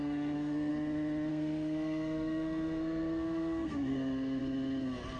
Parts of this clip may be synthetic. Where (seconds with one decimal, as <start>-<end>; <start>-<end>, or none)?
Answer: 0.0-0.7; 1.3-4.4